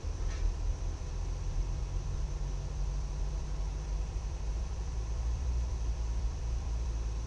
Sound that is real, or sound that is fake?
fake